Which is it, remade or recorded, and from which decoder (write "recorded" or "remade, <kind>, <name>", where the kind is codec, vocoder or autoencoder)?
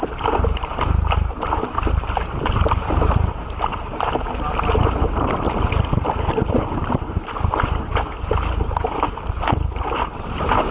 recorded